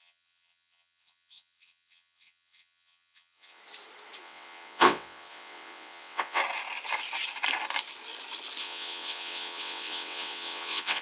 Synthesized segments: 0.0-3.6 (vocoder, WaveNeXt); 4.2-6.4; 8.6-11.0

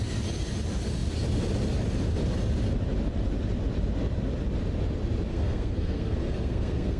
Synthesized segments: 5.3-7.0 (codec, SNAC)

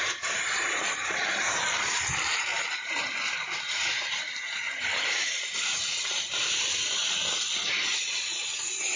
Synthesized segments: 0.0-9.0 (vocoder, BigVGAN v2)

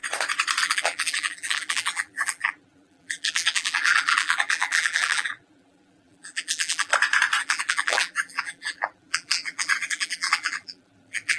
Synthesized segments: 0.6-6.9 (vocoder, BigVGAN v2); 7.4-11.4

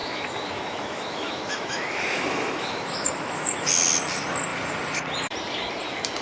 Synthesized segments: 0.0-3.7 (autoencoder, DAC-VAE)

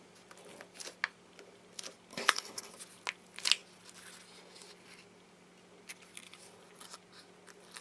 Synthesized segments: 2.1-2.7 (codec, HILCodec)